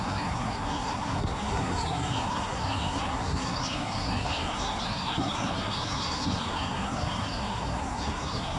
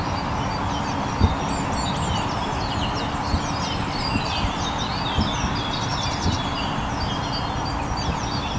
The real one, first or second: second